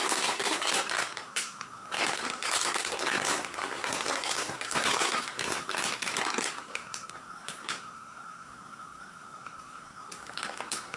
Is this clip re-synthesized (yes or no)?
yes